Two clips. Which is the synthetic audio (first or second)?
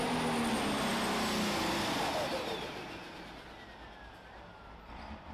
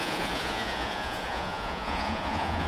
second